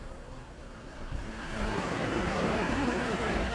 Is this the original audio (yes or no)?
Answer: no